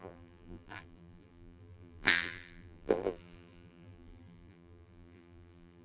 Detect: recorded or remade remade